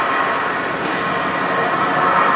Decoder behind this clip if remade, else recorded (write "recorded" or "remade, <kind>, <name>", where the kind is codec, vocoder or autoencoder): recorded